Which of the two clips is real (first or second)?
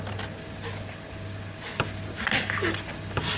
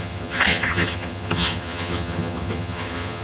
first